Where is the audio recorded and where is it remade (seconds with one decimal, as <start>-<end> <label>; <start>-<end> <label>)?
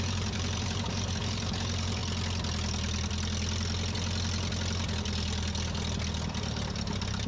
0.0-2.0 remade; 2.0-6.4 recorded; 6.4-7.3 remade